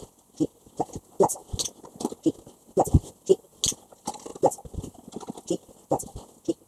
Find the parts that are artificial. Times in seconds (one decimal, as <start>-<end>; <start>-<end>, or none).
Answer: none